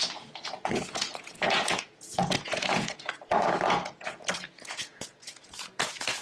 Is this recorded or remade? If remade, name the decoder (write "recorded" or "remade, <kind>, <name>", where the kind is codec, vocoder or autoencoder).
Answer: remade, vocoder, Vocos